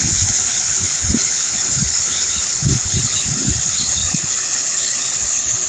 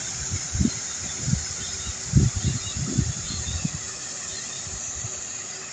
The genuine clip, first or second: second